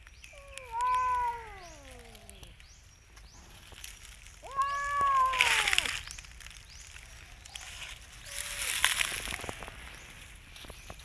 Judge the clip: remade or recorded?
recorded